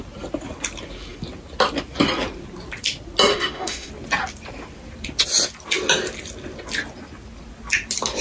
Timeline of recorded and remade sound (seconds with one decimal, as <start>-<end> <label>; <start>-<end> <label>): 0.0-3.3 recorded; 3.3-3.9 remade; 3.9-8.2 recorded

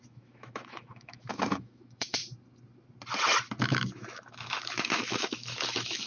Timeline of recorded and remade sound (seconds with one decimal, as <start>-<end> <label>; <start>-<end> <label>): 0.0-2.2 remade; 2.2-3.6 recorded; 3.6-6.1 remade

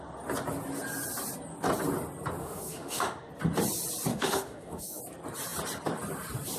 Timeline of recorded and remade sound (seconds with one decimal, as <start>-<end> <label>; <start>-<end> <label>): 0.0-2.4 recorded; 2.4-3.3 remade; 3.3-4.1 recorded; 4.1-5.0 remade; 5.0-6.6 recorded

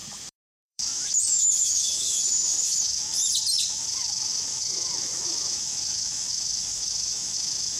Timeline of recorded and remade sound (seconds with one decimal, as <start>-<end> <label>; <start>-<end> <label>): 0.0-3.2 remade; 3.2-3.7 recorded; 3.7-7.8 remade

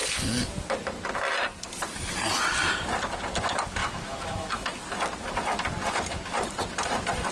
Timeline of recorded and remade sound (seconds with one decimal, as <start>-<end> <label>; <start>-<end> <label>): 0.0-3.8 recorded; 3.8-4.8 remade; 4.8-7.3 recorded